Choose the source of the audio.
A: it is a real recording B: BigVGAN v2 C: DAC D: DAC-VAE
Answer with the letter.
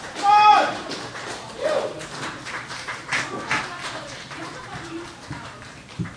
B